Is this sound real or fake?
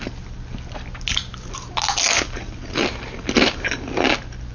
real